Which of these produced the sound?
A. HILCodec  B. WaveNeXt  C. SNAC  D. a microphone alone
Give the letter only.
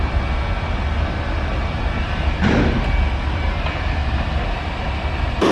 D